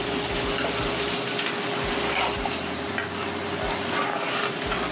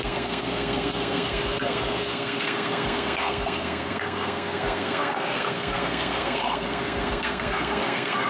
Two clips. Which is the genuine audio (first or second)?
first